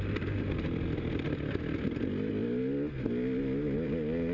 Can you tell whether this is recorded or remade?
recorded